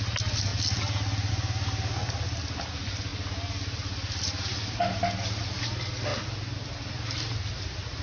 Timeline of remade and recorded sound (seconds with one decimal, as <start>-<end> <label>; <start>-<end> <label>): 0.0-8.0 recorded

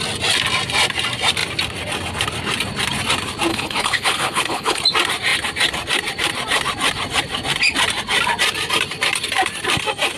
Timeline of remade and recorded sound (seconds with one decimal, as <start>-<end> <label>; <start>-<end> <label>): 0.0-3.5 recorded; 3.5-4.8 remade; 4.8-10.2 recorded

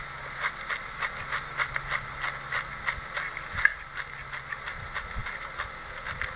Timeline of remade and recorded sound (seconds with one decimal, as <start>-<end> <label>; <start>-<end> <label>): 0.0-6.4 recorded

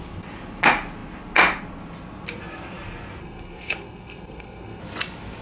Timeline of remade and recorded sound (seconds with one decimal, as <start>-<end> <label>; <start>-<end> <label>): 0.0-3.2 recorded; 3.2-4.8 remade; 4.8-5.4 recorded